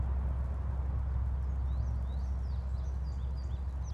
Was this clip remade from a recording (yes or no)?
no